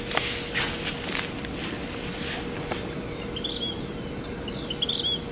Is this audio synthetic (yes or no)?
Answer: no